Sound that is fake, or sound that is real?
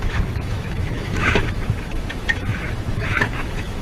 fake